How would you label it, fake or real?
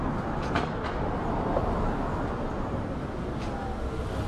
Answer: real